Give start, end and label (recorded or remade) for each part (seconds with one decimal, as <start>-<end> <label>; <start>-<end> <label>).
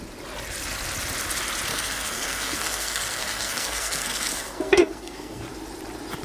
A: 0.0-1.7 recorded; 1.7-5.4 remade; 5.4-6.2 recorded